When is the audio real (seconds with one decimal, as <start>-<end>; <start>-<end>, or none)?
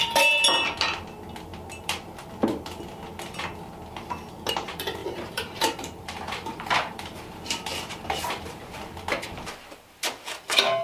0.0-5.0; 8.8-10.8